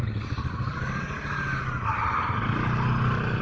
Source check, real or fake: real